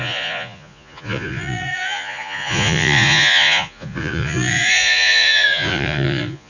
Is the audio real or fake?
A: fake